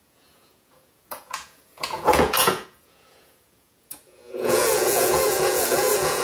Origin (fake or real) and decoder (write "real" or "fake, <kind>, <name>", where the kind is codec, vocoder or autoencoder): fake, vocoder, Vocos